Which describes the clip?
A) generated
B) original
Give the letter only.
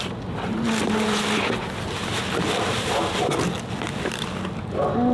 B